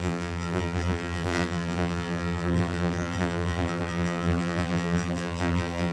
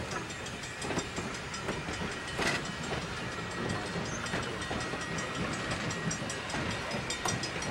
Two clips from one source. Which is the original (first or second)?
second